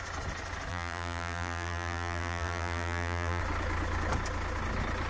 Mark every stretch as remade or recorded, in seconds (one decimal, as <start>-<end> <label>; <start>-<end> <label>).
0.0-0.7 recorded; 0.7-3.4 remade; 3.4-5.1 recorded